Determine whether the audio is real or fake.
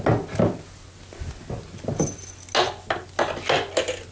real